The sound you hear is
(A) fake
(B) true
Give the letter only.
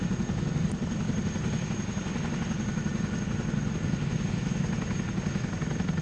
B